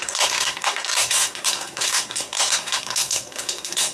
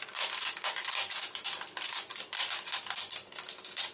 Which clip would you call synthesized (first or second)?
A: first